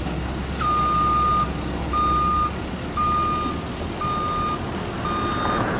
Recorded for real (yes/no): yes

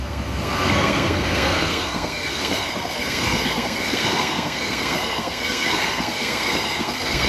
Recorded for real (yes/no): no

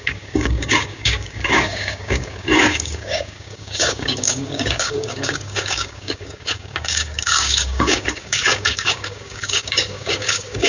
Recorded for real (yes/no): no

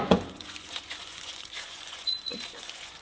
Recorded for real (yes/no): no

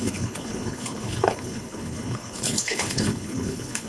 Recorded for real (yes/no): no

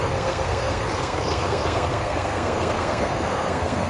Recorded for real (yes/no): no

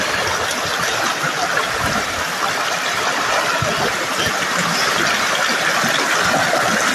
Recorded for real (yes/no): yes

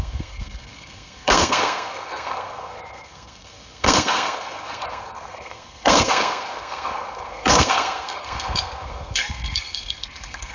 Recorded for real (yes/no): no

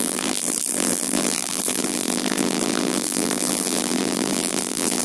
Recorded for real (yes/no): no